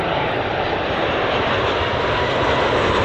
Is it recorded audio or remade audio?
recorded